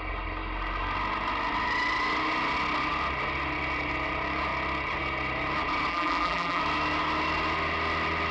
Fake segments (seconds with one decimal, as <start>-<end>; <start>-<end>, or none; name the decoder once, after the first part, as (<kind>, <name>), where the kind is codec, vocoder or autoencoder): 5.9-6.6 (vocoder, BigVGAN v2)